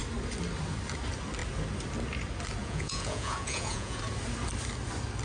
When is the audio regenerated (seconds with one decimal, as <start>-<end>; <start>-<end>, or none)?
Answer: 2.6-4.0